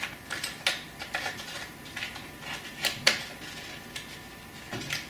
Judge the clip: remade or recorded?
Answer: recorded